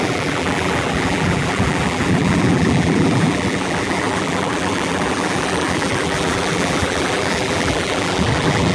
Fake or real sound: fake